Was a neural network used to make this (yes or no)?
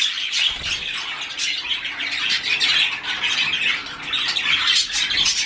no